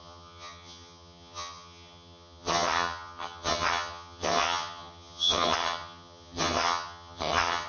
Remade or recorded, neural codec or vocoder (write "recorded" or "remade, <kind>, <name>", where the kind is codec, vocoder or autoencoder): remade, vocoder, HiFi-GAN